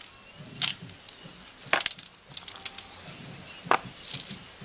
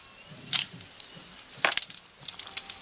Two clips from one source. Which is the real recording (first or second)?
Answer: first